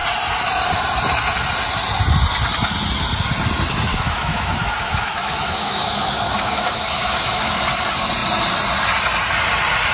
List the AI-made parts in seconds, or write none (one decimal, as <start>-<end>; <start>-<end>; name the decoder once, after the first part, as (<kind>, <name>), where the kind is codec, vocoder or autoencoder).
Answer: 3.9-7.6 (autoencoder, DAC-VAE)